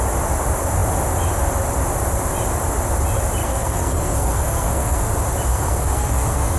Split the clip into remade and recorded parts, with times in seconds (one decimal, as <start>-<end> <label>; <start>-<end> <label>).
0.0-3.4 recorded; 3.4-5.1 remade; 5.1-5.5 recorded; 5.5-6.6 remade